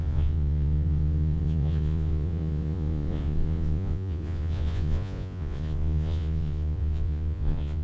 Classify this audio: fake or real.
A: fake